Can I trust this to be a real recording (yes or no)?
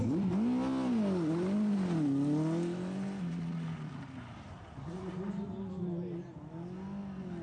yes